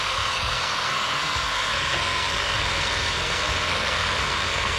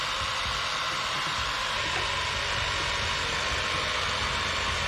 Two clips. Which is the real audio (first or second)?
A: second